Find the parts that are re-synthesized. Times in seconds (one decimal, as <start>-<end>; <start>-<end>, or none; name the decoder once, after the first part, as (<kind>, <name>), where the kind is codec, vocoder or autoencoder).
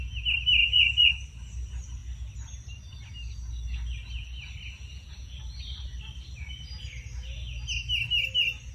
0.6-1.1 (vocoder, Vocos); 4.9-5.4